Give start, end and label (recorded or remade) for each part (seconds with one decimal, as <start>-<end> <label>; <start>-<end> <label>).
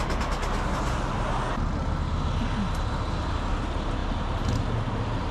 0.0-5.3 recorded